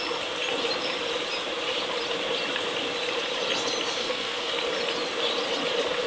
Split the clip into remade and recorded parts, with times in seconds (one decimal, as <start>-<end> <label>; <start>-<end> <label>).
0.0-4.0 recorded; 4.0-4.5 remade; 4.5-6.1 recorded

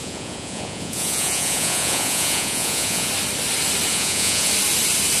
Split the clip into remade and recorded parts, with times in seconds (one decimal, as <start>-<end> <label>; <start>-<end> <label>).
0.0-3.1 remade; 3.1-3.9 recorded; 3.9-4.5 remade; 4.5-5.2 recorded

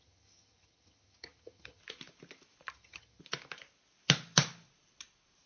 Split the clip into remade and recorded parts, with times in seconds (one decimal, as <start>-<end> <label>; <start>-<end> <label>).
0.0-1.8 remade; 1.8-2.7 recorded; 2.7-3.2 remade; 3.2-5.5 recorded

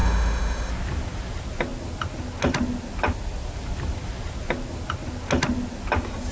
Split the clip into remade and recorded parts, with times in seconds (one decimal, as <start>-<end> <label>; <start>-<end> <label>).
0.0-0.7 remade; 0.7-6.3 recorded

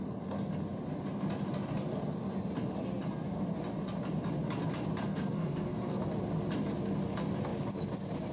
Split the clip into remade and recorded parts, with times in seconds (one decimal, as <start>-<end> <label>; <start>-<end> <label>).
0.0-5.0 recorded; 5.0-6.0 remade; 6.0-8.3 recorded

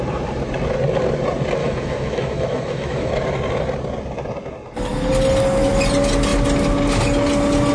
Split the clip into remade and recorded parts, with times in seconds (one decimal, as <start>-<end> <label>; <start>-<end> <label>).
0.0-1.6 recorded; 1.6-3.1 remade; 3.1-7.7 recorded